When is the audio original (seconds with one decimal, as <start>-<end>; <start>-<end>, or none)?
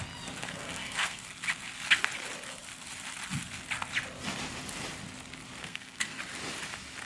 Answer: 0.0-0.4; 1.3-5.6; 6.2-7.1